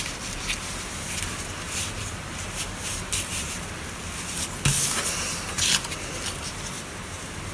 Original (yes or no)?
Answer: yes